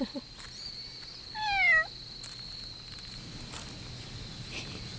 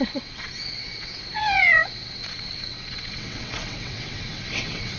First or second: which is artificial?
second